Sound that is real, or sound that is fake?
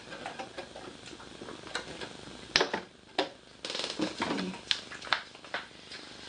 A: real